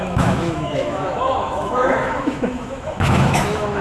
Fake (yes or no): yes